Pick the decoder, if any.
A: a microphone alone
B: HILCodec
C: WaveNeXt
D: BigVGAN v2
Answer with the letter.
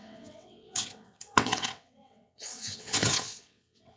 C